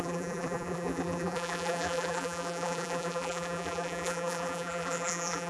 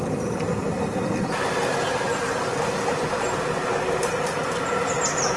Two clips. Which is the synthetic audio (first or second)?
first